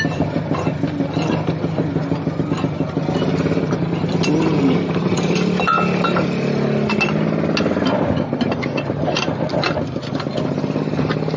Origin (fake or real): real